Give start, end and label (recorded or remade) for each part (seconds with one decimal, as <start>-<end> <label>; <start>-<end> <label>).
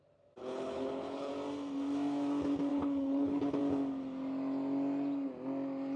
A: 0.0-0.4 recorded; 0.4-1.3 remade; 1.3-2.7 recorded; 2.7-3.6 remade; 3.6-6.0 recorded